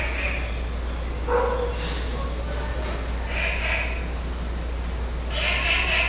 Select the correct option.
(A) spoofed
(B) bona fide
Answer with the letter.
B